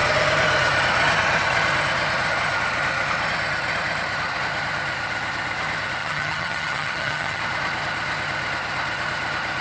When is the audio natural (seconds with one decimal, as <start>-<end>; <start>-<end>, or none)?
0.0-6.0; 7.4-9.6